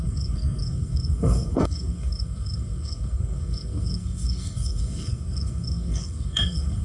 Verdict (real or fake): fake